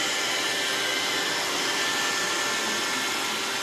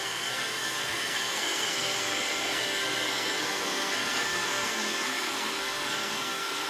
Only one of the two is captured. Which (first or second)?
first